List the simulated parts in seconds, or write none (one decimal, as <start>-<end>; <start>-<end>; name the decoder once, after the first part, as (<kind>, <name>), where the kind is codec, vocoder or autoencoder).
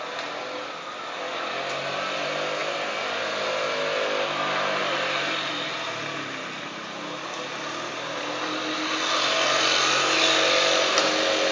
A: none